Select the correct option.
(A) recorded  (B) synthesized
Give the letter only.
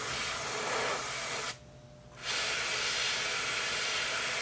A